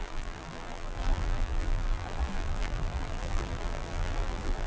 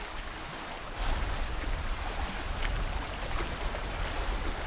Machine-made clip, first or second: first